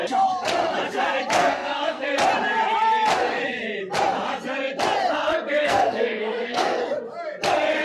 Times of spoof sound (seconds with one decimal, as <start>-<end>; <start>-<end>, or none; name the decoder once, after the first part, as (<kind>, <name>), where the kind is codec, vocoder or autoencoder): 1.4-2.1 (codec, SNAC); 5.6-6.8